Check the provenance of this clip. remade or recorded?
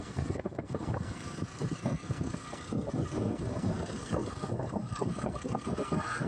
remade